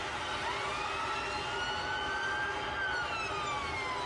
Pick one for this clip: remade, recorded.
recorded